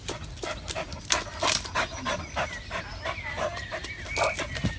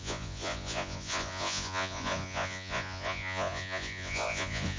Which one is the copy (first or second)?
second